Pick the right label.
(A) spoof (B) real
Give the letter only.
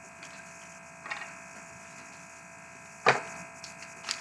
B